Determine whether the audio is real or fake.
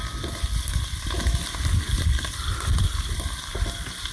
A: real